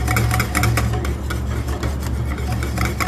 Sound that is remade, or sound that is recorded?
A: recorded